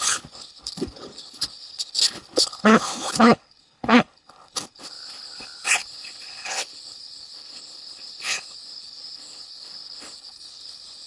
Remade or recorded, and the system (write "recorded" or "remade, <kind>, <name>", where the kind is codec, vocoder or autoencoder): remade, codec, HILCodec